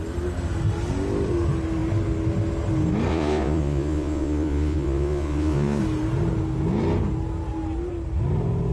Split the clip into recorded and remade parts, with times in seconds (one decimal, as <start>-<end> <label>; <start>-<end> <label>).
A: 0.0-3.1 recorded; 3.1-5.8 remade; 5.8-8.7 recorded